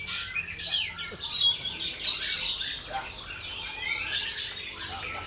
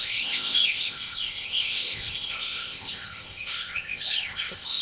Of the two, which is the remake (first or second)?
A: second